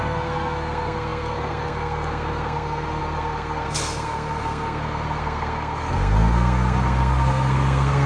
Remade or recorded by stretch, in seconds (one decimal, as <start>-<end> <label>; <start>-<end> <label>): 0.0-8.1 remade